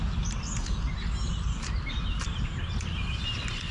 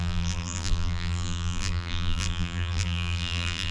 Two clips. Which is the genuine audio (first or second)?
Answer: first